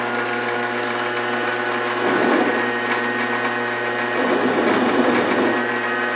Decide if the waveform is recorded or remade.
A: recorded